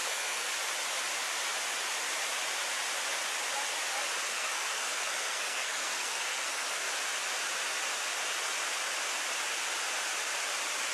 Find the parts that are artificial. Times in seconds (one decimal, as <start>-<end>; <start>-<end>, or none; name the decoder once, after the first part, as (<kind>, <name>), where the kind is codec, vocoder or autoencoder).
0.0-0.5 (codec, SNAC); 4.3-6.9